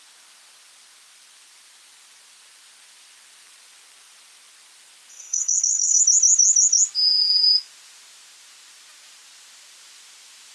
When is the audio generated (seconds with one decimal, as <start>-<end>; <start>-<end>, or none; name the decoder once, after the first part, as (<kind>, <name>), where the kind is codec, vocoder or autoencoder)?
5.1-6.0 (codec, SNAC)